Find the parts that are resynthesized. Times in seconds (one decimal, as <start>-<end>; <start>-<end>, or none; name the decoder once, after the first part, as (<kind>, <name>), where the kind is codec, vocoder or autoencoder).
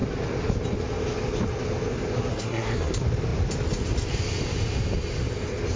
2.3-2.9 (codec, SNAC)